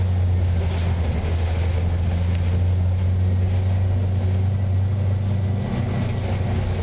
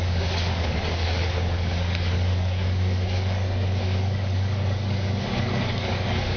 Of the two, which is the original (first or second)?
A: first